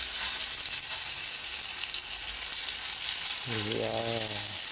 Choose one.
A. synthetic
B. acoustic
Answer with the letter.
B